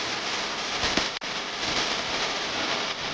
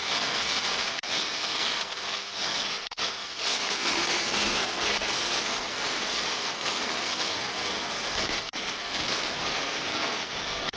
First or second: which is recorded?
first